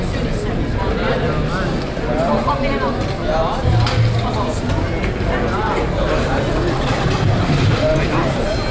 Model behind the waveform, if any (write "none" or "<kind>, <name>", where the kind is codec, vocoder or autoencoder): none